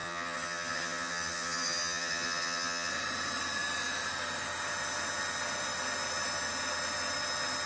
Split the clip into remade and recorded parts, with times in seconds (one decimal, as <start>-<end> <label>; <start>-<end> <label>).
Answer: 0.0-2.9 remade; 2.9-7.7 recorded